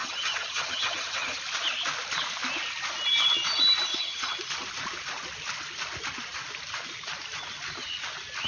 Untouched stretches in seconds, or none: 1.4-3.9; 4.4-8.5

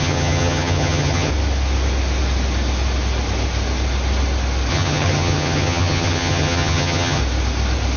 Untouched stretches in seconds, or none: 1.3-4.7; 7.2-8.0

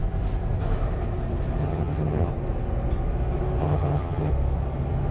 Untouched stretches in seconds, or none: 0.0-1.6; 2.3-3.6; 4.3-5.1

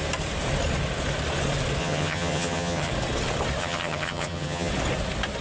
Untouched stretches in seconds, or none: 0.0-1.8; 2.9-3.6; 4.7-5.4

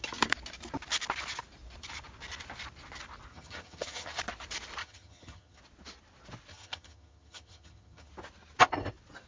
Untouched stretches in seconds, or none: 0.0-3.3; 4.2-4.8; 5.6-6.5; 8.1-9.3

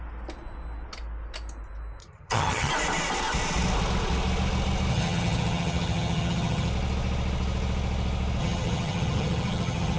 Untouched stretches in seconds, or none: 0.0-2.0; 2.7-4.9; 6.7-8.4